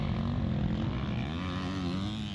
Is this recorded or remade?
recorded